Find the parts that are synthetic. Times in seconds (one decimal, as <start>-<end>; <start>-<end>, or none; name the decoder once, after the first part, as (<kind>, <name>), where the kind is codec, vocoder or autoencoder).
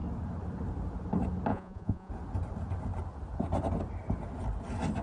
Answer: 1.5-2.1 (vocoder, Vocos)